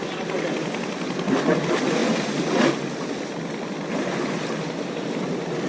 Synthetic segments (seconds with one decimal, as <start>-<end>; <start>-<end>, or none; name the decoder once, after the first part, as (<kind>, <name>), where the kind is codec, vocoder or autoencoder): none